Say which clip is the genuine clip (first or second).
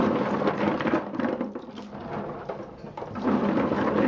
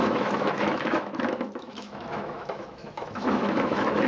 first